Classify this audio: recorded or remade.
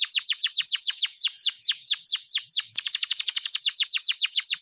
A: remade